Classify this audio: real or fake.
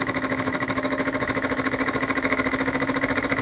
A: fake